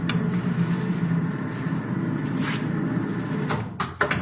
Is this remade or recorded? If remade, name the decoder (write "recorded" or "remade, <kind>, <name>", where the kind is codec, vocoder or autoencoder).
recorded